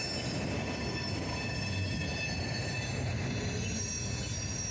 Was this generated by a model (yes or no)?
no